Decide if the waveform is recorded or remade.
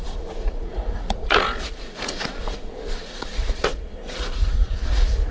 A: remade